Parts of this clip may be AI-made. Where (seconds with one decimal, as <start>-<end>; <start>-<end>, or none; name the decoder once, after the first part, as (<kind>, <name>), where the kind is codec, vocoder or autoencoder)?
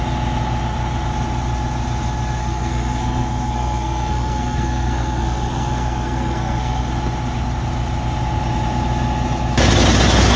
2.4-6.9 (codec, SNAC)